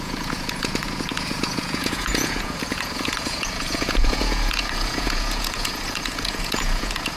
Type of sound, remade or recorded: remade